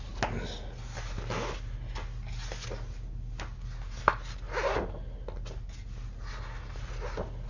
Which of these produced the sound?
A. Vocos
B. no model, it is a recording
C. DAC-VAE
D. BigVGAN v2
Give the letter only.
B